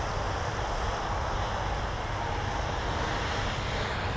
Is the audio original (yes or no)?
yes